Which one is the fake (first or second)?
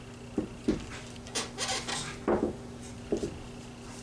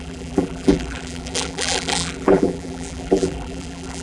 second